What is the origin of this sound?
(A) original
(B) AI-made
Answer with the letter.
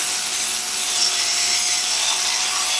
A